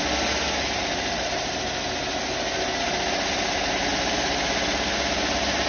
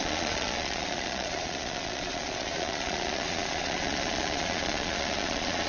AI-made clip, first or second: second